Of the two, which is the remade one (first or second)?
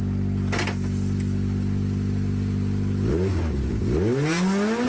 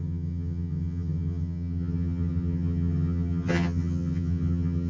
second